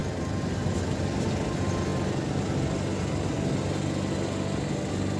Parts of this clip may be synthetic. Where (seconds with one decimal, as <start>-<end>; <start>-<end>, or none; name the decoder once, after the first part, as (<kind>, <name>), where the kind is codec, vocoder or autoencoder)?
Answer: none